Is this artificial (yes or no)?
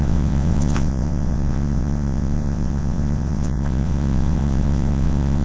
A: yes